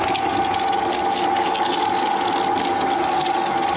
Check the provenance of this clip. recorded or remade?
recorded